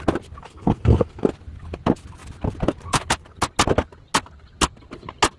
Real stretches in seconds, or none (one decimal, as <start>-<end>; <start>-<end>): 0.0-0.4; 1.3-5.4